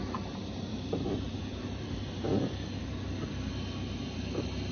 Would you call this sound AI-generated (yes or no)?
yes